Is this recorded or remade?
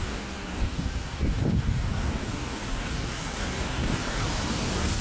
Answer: remade